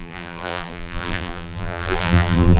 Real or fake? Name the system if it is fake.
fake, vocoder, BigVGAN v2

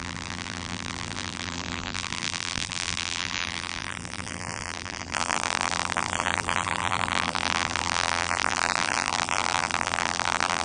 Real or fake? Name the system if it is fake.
fake, vocoder, BigVGAN v2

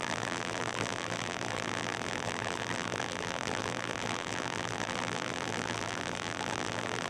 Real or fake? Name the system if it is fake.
fake, vocoder, BigVGAN v2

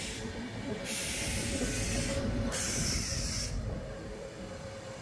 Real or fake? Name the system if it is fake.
fake, vocoder, BigVGAN v2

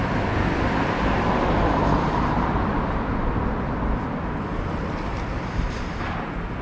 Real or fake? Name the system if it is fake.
real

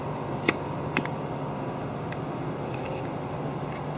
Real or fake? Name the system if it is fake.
real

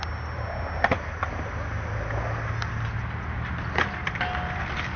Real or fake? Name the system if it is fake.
real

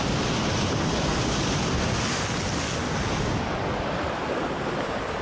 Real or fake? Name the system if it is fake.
real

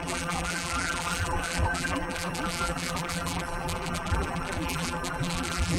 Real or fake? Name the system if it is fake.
fake, vocoder, BigVGAN v2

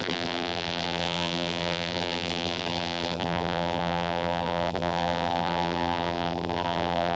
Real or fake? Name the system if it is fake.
fake, vocoder, BigVGAN v2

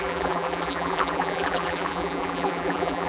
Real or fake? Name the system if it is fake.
fake, vocoder, BigVGAN v2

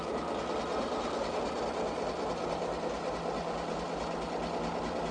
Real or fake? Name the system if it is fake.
real